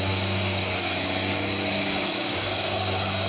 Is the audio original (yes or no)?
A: no